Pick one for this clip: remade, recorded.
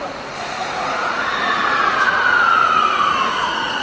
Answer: remade